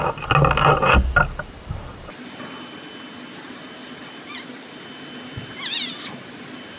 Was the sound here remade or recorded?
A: recorded